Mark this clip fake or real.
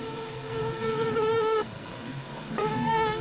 fake